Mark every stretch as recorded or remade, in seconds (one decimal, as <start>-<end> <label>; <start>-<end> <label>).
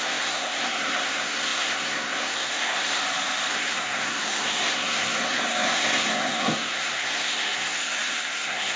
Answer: 0.0-3.0 remade; 3.0-3.5 recorded; 3.5-8.8 remade